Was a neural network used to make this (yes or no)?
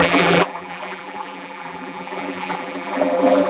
yes